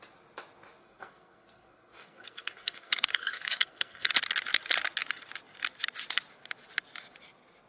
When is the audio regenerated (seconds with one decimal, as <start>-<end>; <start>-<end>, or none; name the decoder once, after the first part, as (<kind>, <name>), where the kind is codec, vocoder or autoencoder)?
0.8-4.1 (codec, SNAC)